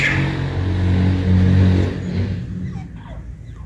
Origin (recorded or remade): recorded